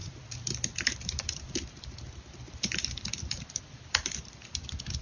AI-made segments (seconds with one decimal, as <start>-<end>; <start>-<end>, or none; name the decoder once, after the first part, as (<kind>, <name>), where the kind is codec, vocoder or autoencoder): 0.0-5.0 (vocoder, BigVGAN v2)